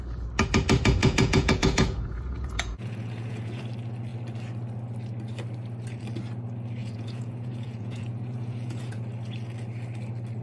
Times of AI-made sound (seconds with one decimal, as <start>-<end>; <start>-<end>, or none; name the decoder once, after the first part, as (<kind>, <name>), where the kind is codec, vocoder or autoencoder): 1.0-3.6 (vocoder, Vocos); 6.8-9.0